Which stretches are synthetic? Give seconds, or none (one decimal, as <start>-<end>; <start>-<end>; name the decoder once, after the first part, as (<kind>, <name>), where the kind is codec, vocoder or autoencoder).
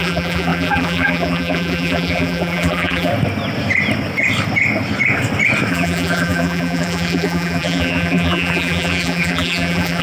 0.0-3.1 (vocoder, BigVGAN v2); 5.7-10.0